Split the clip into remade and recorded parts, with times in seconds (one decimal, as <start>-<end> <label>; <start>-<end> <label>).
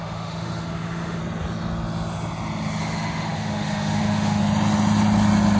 0.0-1.2 remade; 1.2-2.8 recorded; 2.8-4.4 remade; 4.4-5.6 recorded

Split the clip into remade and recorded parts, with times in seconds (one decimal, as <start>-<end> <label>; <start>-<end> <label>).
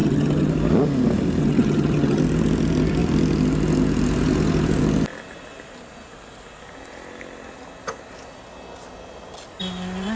0.0-0.5 remade; 0.5-1.4 recorded; 1.4-2.2 remade; 2.2-10.2 recorded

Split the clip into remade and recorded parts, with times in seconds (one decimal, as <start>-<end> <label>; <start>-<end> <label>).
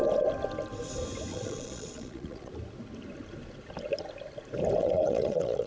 0.0-1.3 recorded; 1.3-2.5 remade; 2.5-4.8 recorded; 4.8-5.7 remade